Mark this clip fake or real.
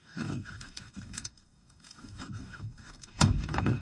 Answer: fake